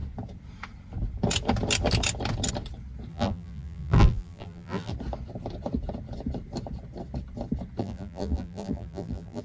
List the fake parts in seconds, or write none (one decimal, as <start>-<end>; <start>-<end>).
3.1-4.9; 7.8-9.4